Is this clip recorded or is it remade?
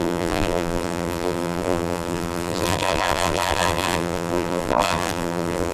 remade